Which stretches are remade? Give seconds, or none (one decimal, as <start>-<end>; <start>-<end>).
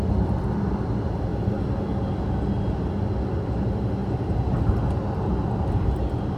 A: none